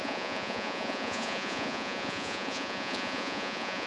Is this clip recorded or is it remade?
remade